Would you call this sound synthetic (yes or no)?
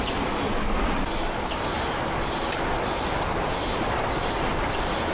no